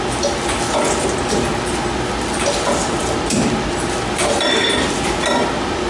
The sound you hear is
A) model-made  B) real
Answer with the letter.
B